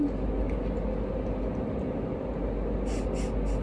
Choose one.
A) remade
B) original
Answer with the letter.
B